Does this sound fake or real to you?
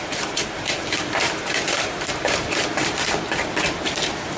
fake